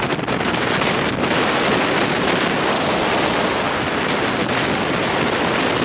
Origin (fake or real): real